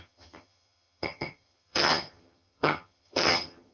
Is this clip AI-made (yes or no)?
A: yes